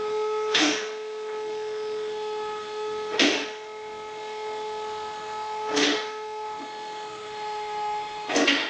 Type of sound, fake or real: fake